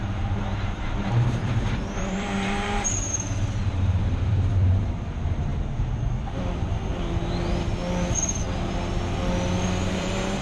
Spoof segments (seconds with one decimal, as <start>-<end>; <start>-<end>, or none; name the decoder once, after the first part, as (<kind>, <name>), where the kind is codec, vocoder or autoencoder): 0.0-5.5 (vocoder, BigVGAN v2); 9.9-10.4

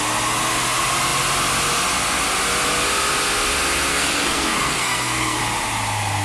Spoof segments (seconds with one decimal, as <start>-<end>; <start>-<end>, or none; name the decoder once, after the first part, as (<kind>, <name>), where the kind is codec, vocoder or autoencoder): 3.9-5.4 (codec, SNAC)

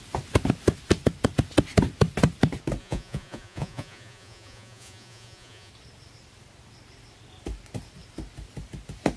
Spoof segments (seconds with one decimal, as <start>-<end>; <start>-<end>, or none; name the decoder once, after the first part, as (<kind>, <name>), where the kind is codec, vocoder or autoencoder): 2.8-5.7 (vocoder, Vocos)

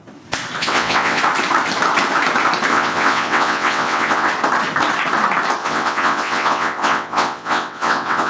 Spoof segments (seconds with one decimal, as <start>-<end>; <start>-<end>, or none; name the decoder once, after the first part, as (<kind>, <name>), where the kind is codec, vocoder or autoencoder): 0.6-1.2 (vocoder, WaveNeXt); 2.7-4.3; 5.6-8.3

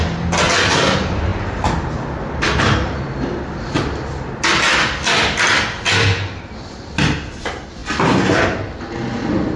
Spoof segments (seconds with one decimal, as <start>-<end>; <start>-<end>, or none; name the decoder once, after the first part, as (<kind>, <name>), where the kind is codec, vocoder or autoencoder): none

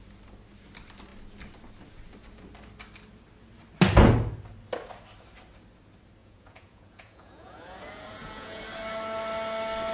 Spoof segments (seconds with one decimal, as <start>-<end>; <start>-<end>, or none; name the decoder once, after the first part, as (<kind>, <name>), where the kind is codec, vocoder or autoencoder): 6.2-8.6 (vocoder, Vocos)